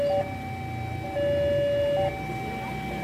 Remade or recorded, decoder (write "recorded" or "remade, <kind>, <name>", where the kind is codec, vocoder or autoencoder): recorded